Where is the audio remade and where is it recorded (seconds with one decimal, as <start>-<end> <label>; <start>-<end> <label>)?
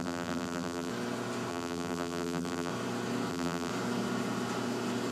0.0-0.9 remade; 0.9-1.5 recorded; 1.5-2.7 remade; 2.7-3.3 recorded; 3.3-3.7 remade; 3.7-5.1 recorded